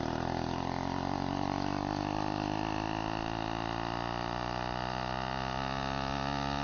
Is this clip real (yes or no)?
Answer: yes